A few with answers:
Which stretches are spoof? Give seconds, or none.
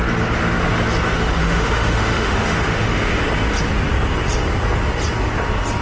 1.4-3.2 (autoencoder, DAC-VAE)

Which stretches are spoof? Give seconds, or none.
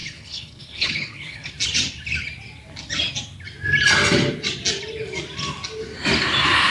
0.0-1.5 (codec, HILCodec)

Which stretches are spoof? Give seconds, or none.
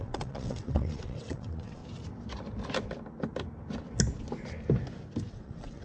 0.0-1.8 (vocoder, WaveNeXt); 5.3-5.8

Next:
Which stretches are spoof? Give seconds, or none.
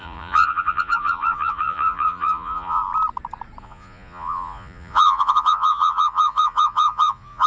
0.0-2.8 (vocoder, Vocos); 3.6-7.5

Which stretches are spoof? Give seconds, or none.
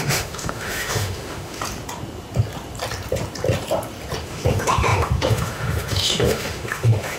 0.0-1.6 (autoencoder, DAC-VAE); 4.2-7.2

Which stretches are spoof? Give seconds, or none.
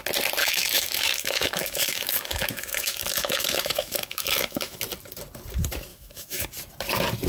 0.4-4.8 (autoencoder, DAC-VAE); 5.9-6.5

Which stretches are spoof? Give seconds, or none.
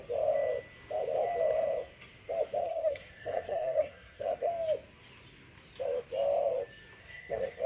2.6-4.5 (codec, SNAC); 7.0-7.7